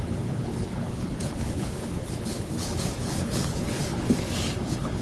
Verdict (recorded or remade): remade